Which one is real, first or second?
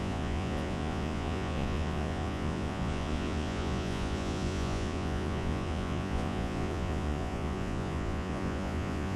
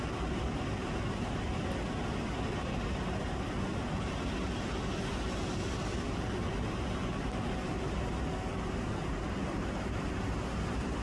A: second